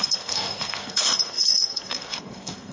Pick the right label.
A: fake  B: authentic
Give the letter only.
A